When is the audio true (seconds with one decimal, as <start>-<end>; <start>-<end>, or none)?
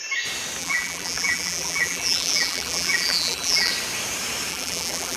0.0-0.6; 3.7-4.5